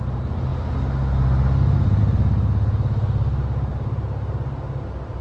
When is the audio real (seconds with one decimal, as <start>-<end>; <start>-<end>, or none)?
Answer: 0.0-5.2